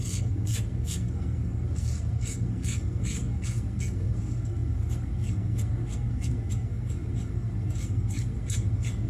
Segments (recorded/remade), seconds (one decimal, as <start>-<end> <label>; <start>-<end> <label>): 0.0-9.1 remade